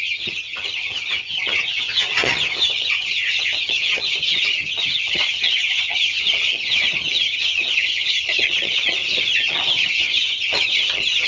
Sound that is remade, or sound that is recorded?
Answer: remade